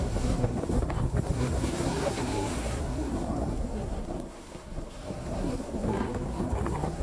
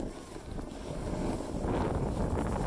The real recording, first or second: second